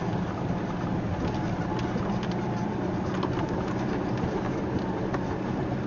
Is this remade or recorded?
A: recorded